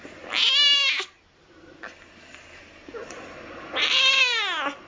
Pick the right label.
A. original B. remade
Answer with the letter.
A